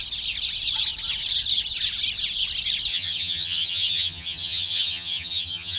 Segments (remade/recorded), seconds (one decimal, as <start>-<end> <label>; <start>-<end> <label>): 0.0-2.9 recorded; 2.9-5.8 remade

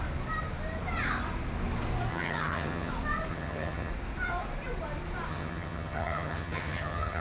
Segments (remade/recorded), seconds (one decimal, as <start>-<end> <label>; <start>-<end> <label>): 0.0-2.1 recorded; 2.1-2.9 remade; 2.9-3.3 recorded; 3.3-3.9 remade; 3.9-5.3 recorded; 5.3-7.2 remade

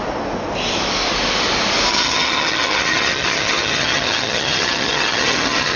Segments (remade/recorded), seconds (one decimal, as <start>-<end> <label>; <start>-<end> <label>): 0.0-1.9 recorded; 1.9-5.8 remade

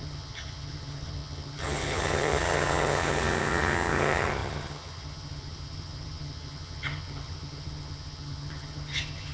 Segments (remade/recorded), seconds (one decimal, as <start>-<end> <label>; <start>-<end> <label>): 0.0-9.3 remade